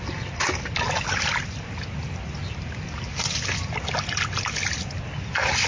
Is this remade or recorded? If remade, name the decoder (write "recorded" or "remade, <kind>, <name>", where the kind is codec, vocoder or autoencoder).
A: recorded